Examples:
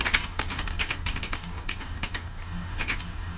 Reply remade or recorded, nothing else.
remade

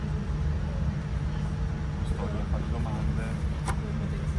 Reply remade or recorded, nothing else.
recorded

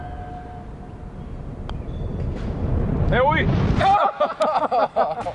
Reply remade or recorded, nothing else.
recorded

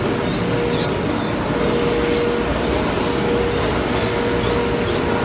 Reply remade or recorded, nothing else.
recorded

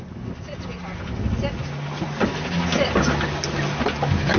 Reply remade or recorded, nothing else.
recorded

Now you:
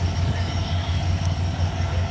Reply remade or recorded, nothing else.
remade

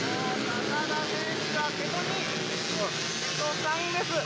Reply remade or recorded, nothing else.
recorded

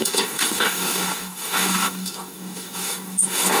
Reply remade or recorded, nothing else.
remade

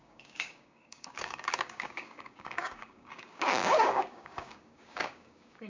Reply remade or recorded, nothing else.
remade